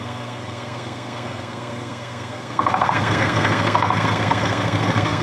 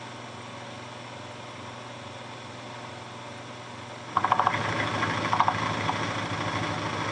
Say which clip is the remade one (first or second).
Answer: first